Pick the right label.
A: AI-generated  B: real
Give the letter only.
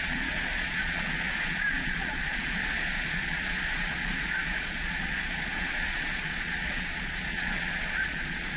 A